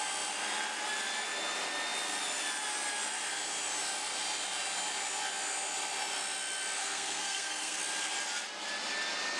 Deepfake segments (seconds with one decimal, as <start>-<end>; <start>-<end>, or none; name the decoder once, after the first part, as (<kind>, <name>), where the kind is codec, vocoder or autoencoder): 6.8-7.8 (codec, SNAC)